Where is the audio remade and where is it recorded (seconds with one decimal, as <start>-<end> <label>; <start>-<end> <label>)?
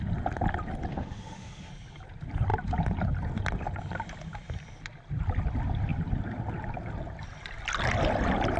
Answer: 0.0-0.9 recorded; 0.9-1.7 remade; 1.7-8.6 recorded